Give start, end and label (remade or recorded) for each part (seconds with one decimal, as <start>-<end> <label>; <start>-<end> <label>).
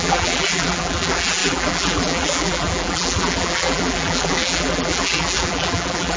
0.0-6.2 remade